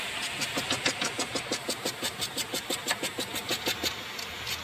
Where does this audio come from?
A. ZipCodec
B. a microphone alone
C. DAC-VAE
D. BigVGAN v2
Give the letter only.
B